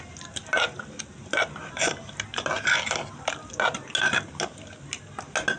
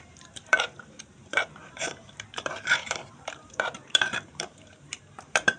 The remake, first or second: second